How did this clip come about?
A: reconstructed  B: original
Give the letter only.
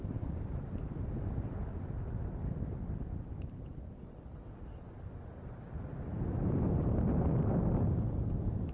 B